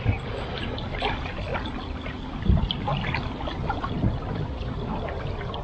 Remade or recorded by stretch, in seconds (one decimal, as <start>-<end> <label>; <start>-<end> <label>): 0.0-5.6 recorded